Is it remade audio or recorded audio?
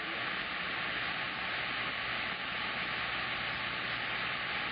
recorded